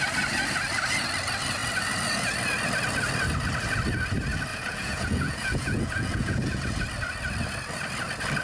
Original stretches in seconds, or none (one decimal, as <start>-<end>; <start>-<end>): 0.0-4.5; 6.6-8.4